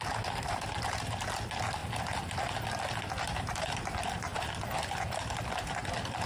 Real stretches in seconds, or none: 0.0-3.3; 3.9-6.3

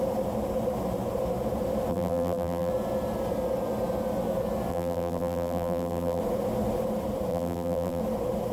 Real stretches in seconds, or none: 0.0-1.9; 2.7-4.7; 6.2-7.3; 8.0-8.5